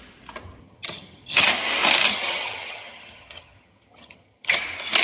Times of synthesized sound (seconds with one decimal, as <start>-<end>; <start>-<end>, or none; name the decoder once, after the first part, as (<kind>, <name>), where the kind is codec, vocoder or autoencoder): 0.6-1.5 (vocoder, HiFi-GAN); 2.1-4.6

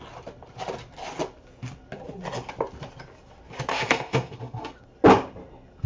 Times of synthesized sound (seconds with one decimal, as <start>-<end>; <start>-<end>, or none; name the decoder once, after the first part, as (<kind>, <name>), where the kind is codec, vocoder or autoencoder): 3.7-4.8 (codec, SNAC)